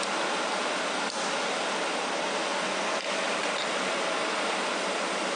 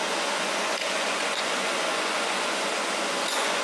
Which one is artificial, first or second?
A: second